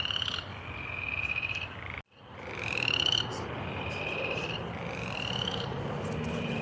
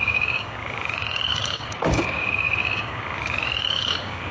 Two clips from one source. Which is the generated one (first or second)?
second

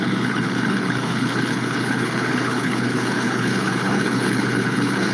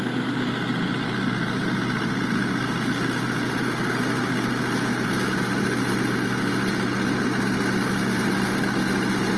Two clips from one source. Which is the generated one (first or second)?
first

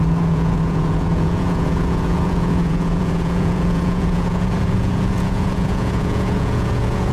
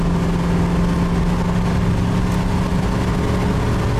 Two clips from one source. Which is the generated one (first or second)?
first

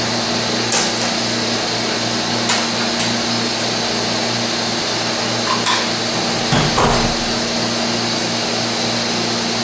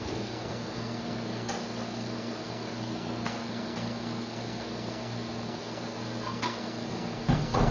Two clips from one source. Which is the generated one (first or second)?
second